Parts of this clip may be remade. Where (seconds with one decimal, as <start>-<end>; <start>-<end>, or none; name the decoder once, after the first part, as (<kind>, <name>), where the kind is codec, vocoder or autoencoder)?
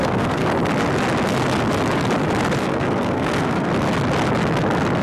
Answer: 0.0-0.4 (codec, SNAC); 2.6-3.7